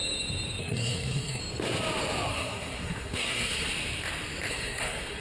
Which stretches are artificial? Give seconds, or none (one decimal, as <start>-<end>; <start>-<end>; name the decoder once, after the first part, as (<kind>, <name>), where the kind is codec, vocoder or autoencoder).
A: 0.6-1.4 (codec, SNAC); 2.3-3.7; 4.5-5.2